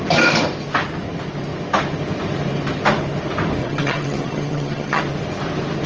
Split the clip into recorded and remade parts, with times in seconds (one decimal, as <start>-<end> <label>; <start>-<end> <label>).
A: 0.0-3.6 recorded; 3.6-5.0 remade; 5.0-5.9 recorded